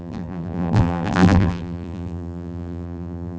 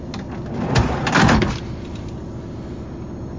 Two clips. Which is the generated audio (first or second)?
first